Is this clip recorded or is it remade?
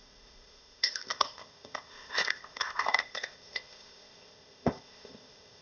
remade